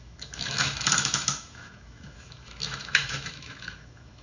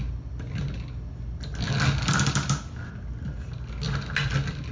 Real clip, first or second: second